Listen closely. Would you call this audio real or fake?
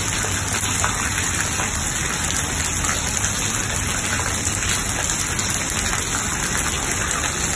real